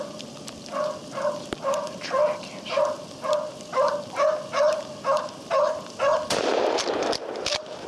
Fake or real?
real